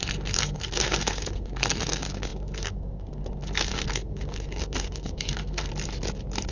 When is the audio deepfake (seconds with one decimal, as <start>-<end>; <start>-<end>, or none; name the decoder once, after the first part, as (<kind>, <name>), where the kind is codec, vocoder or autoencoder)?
0.0-5.7 (codec, SNAC)